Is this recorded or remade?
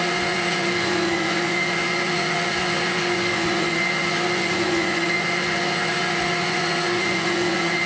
remade